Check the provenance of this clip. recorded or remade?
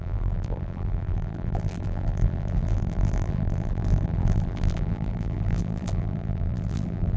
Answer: remade